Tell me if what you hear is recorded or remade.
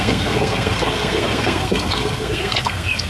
remade